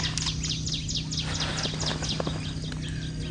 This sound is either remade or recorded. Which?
recorded